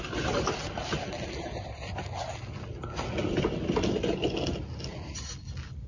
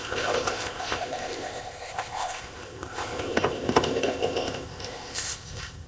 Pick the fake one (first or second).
second